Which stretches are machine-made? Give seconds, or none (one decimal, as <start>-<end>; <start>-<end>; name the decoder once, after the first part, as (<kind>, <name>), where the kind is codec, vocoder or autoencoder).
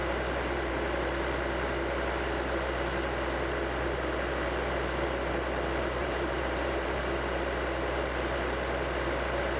6.0-7.0 (vocoder, BigVGAN v2)